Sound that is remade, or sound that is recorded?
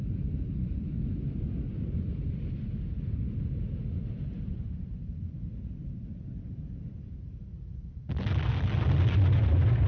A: recorded